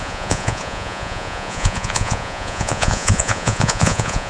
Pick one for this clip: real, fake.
fake